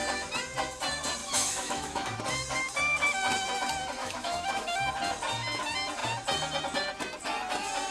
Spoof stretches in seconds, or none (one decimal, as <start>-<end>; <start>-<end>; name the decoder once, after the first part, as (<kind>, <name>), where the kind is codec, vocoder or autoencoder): 1.2-2.2 (autoencoder, DAC-VAE); 4.0-4.9